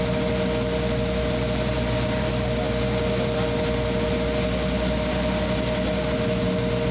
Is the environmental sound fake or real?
real